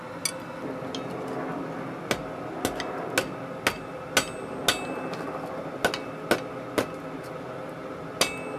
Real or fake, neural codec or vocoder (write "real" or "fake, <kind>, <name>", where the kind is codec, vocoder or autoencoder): real